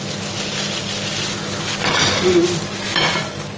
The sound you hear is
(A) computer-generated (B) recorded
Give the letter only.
B